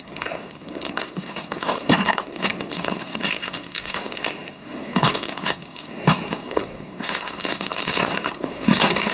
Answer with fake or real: fake